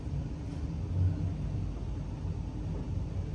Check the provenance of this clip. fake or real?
real